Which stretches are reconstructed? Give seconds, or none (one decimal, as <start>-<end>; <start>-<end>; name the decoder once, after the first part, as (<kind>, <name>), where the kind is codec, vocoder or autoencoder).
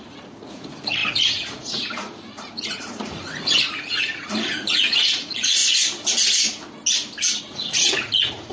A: 0.0-5.6 (vocoder, Vocos); 7.4-8.5